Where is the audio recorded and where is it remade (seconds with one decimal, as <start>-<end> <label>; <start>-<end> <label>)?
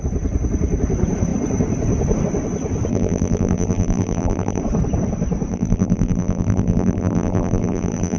0.0-2.9 recorded; 2.9-4.6 remade; 4.6-5.5 recorded; 5.5-8.2 remade